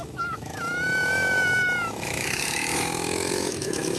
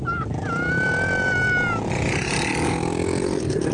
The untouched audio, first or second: second